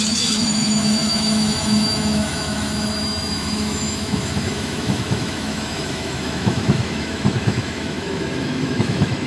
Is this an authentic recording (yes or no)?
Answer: no